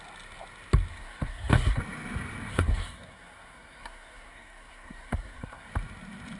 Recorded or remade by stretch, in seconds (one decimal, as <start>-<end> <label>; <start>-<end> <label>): 0.0-0.9 recorded; 0.9-1.8 remade; 1.8-2.5 recorded; 2.5-5.7 remade; 5.7-6.4 recorded